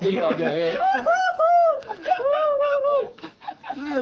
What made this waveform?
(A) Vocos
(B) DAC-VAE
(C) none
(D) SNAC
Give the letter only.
D